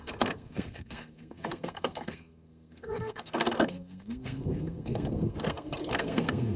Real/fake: fake